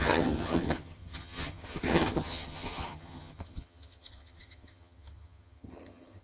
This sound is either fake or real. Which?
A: fake